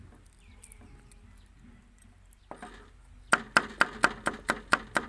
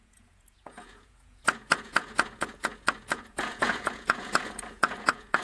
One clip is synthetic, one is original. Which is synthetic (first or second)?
second